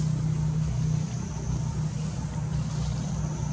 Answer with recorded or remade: recorded